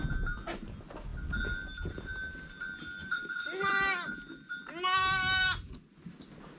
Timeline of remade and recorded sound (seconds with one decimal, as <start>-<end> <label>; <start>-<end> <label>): 0.0-6.6 recorded